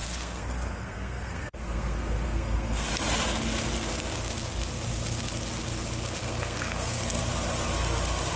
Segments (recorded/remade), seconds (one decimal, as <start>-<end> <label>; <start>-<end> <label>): 0.0-2.9 remade; 2.9-6.2 recorded; 6.2-7.2 remade; 7.2-8.4 recorded